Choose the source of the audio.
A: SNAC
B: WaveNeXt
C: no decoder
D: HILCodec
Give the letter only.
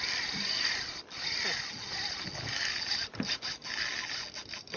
C